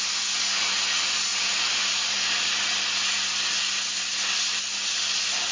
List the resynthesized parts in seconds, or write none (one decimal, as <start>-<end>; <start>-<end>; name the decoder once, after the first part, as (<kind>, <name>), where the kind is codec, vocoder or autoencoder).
1.3-4.6 (vocoder, BigVGAN v2)